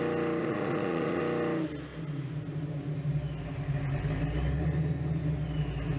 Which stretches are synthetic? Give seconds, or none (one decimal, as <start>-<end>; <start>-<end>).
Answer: 0.4-1.2